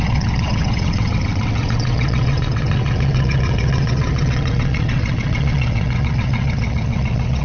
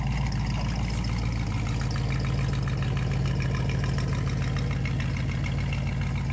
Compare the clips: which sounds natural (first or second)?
second